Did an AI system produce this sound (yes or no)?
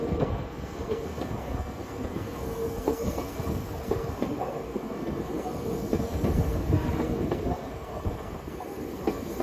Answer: yes